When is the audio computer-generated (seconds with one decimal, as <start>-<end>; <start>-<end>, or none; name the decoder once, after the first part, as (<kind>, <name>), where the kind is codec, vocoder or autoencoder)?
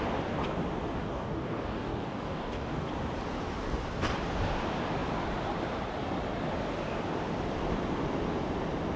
1.0-2.9 (codec, DAC)